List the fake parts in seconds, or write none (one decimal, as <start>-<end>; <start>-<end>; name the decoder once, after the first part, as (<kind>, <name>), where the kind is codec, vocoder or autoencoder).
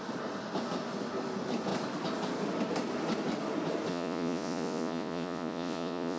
3.9-6.2 (vocoder, Vocos)